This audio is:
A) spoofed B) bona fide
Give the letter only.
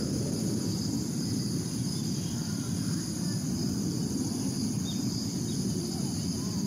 A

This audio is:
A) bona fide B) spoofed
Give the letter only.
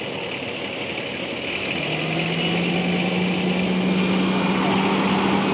A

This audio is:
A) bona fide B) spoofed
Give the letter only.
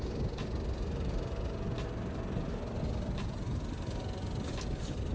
A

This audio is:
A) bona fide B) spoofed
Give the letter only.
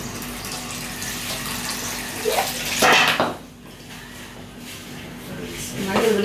A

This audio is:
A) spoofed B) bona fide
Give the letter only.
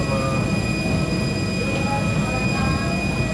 B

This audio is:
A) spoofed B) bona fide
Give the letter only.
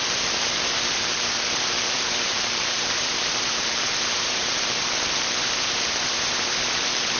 A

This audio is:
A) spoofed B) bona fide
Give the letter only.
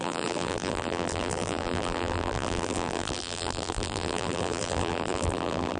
A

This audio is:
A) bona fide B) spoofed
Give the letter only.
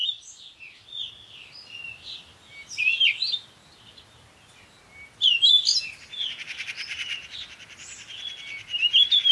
A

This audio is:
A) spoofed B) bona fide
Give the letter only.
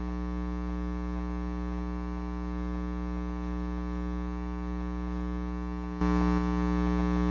B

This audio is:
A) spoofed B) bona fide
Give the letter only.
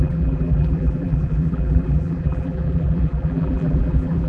A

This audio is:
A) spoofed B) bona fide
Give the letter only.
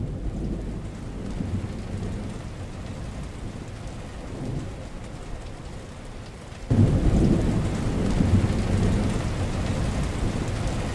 B